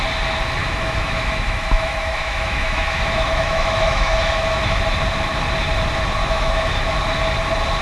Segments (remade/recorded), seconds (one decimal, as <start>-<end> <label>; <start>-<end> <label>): 0.0-0.6 recorded; 0.6-4.8 remade; 4.8-6.2 recorded; 6.2-7.0 remade; 7.0-7.8 recorded